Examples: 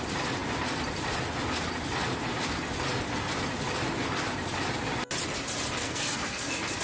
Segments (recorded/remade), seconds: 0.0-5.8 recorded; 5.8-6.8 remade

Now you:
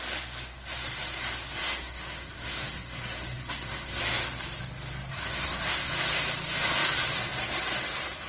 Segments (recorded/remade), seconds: 0.0-1.6 recorded; 1.6-4.0 remade; 4.0-5.1 recorded; 5.1-5.9 remade; 5.9-8.3 recorded

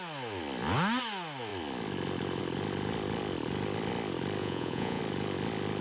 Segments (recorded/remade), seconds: 0.0-4.4 recorded; 4.4-5.0 remade; 5.0-5.8 recorded

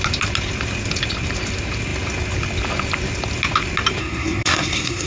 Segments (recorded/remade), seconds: 0.0-4.0 recorded; 4.0-5.1 remade

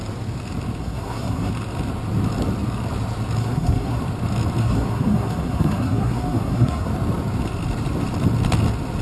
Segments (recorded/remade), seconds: 0.0-0.8 recorded; 0.8-1.5 remade; 1.5-3.4 recorded; 3.4-4.0 remade; 4.0-4.6 recorded; 4.6-6.9 remade; 6.9-9.0 recorded

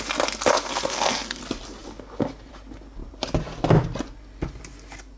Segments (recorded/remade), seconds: 0.0-0.5 recorded; 0.5-1.4 remade; 1.4-5.2 recorded